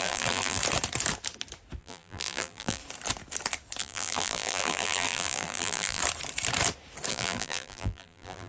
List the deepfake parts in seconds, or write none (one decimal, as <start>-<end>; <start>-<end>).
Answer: 0.0-0.6; 1.8-2.8; 3.8-6.0; 7.1-8.5